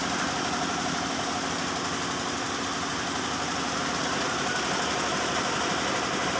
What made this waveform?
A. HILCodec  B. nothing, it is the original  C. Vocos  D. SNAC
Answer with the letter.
B